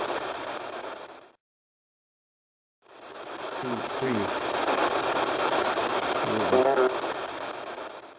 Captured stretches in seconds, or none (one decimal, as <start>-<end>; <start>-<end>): 5.8-8.2